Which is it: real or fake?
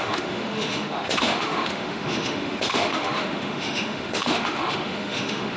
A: fake